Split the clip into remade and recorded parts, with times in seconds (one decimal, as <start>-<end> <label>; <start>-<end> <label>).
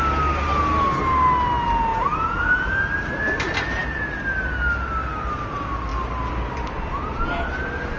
0.0-1.9 recorded; 1.9-2.7 remade; 2.7-8.0 recorded